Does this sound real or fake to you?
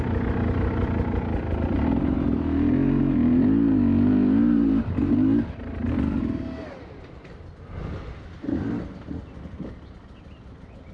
real